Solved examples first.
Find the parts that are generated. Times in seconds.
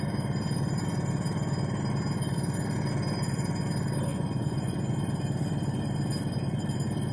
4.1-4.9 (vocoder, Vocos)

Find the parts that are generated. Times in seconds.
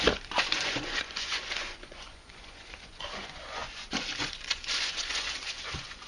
0.0-6.1 (vocoder, Vocos)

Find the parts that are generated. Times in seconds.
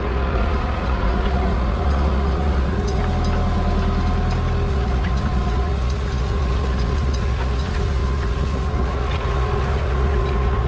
0.0-3.0 (vocoder, Vocos); 4.7-10.7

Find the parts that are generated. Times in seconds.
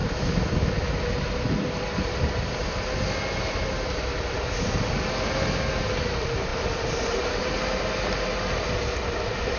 none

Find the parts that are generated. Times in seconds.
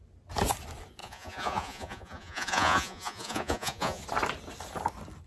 1.0-4.0 (vocoder, Vocos)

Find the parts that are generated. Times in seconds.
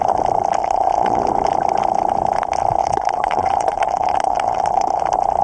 0.6-1.2 (vocoder, Vocos); 2.8-5.0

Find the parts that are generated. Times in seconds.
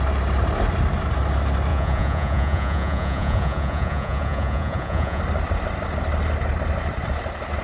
1.7-5.2 (vocoder, Vocos)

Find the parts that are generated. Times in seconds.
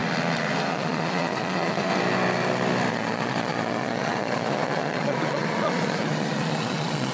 0.7-1.9 (vocoder, Vocos); 2.9-7.1